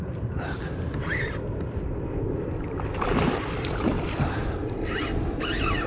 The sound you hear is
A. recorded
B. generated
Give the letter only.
A